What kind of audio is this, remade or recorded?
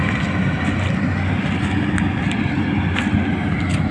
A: recorded